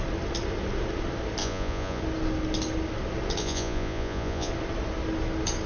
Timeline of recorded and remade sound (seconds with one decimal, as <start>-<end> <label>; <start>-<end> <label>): 0.0-1.4 recorded; 1.4-2.0 remade; 2.0-3.4 recorded; 3.4-4.5 remade; 4.5-5.7 recorded